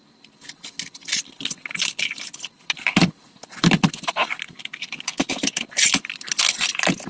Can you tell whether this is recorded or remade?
recorded